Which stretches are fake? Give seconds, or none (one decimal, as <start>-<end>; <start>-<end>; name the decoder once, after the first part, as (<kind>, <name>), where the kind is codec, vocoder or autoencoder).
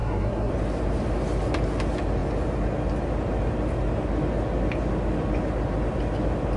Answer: 0.0-0.5 (codec, SNAC)